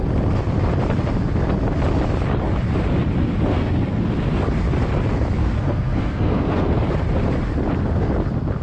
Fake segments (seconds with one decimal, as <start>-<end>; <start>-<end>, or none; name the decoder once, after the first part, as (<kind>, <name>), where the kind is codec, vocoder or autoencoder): 3.5-4.0 (codec, SNAC); 5.4-6.8